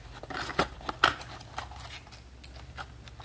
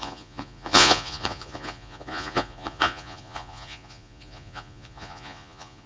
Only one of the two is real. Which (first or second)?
first